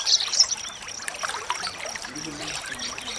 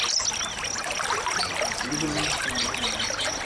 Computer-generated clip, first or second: first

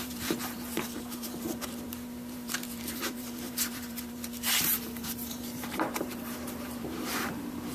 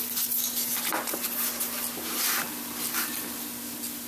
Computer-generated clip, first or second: first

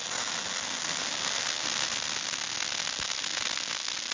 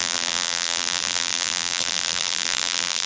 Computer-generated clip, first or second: second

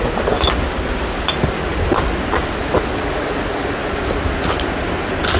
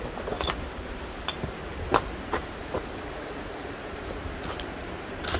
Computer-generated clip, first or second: second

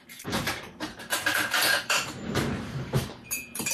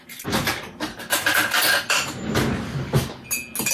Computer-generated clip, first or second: first